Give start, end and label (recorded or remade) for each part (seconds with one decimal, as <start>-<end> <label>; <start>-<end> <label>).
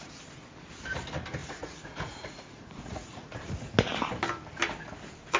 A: 0.0-1.4 recorded; 1.4-3.5 remade; 3.5-5.4 recorded